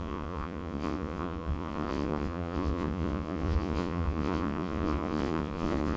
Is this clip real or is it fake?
fake